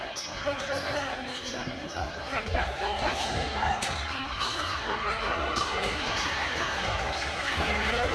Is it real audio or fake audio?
fake